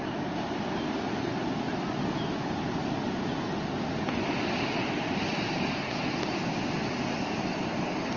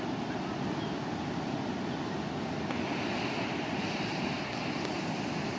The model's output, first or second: second